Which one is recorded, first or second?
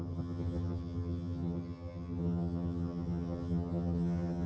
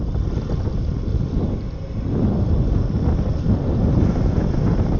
second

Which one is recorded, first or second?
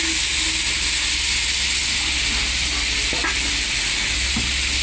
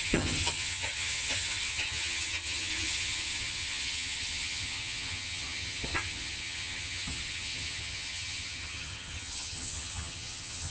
first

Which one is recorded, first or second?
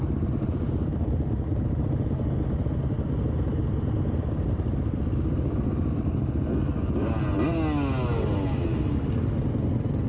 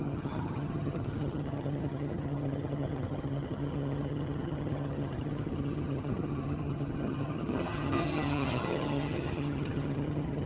first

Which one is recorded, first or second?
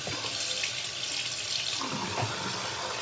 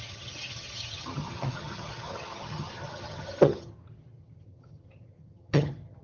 first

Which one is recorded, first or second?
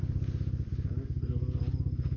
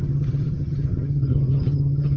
first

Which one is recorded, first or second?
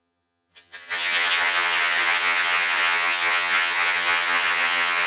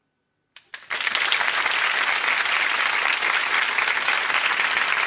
second